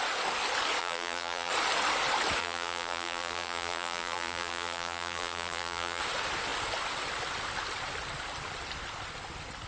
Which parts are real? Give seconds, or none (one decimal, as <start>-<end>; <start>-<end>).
0.0-0.8; 1.5-2.4; 6.0-9.7